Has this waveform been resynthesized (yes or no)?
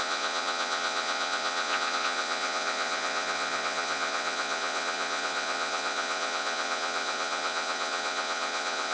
yes